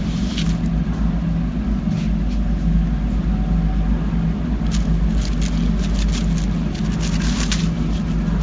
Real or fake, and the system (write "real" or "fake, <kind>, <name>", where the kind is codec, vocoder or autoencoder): real